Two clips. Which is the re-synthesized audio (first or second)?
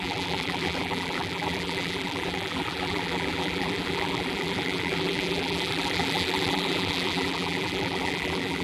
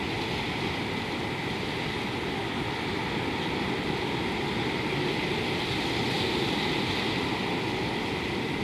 first